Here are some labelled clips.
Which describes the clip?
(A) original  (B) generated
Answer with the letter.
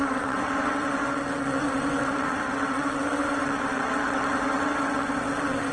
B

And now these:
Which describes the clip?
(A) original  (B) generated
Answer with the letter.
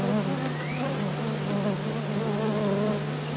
A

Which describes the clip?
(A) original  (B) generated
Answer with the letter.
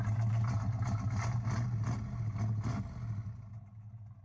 A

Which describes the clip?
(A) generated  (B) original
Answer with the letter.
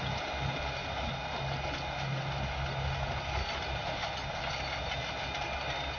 B